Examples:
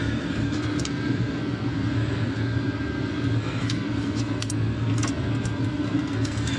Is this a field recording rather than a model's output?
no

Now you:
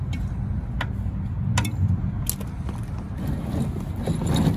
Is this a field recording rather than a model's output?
yes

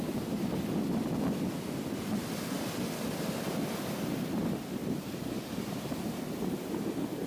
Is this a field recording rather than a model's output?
yes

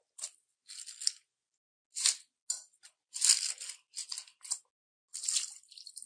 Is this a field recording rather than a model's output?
yes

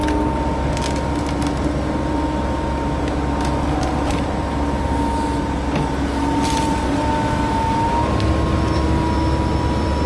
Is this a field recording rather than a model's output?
yes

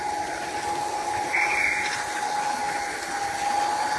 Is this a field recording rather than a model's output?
yes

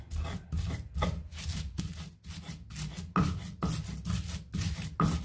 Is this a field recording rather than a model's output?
yes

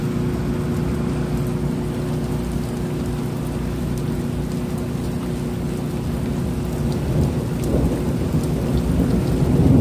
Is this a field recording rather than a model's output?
yes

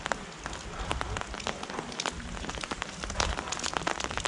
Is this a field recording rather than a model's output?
yes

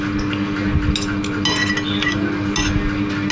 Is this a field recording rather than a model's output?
yes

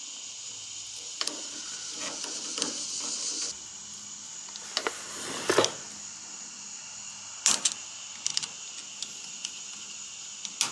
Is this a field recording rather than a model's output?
yes